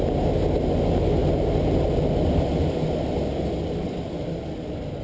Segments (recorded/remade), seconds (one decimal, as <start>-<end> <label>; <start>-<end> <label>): 0.0-5.0 recorded